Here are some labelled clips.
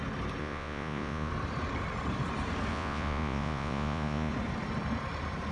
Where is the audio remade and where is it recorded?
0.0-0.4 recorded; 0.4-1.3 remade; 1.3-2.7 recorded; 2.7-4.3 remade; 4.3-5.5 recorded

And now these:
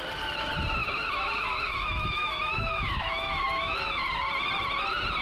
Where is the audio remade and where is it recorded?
0.0-0.8 recorded; 0.8-3.9 remade; 3.9-5.2 recorded

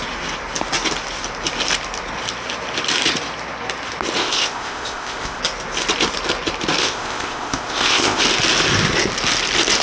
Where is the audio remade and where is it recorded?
0.0-4.2 recorded; 4.2-5.4 remade; 5.4-6.8 recorded; 6.8-8.2 remade; 8.2-9.8 recorded